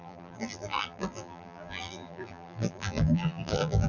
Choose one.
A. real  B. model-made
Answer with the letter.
B